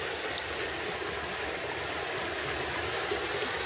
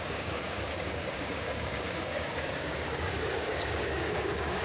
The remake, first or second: second